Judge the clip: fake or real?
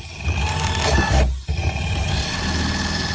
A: real